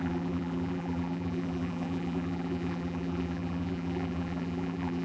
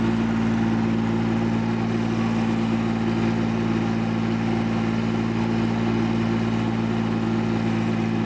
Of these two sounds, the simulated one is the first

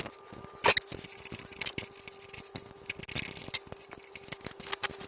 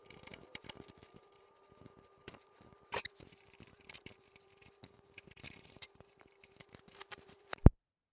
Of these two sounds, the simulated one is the second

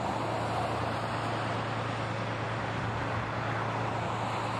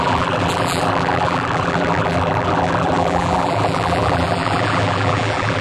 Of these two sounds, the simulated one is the second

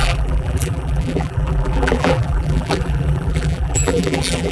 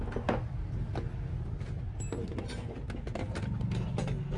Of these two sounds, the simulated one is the first